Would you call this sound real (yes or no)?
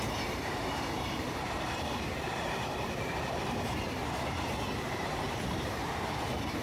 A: no